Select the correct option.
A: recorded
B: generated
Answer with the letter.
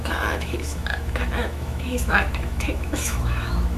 B